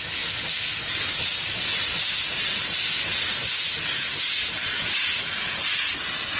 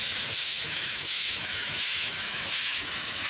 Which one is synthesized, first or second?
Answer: second